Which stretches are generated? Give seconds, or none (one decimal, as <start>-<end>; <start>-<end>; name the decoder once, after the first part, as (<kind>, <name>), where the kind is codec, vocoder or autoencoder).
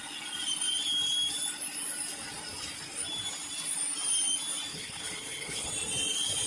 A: 4.7-5.7 (codec, HILCodec)